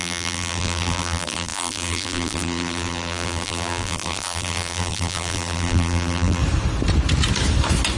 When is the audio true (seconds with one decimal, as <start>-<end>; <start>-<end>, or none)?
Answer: 6.4-8.0

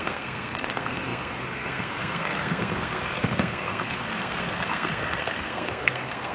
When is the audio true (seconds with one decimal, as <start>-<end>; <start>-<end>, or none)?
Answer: none